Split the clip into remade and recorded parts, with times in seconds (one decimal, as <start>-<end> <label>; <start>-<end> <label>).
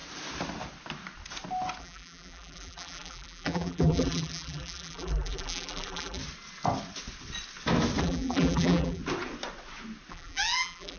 0.0-1.8 recorded; 1.8-6.2 remade; 6.2-8.0 recorded; 8.0-9.0 remade; 9.0-10.1 recorded; 10.1-11.0 remade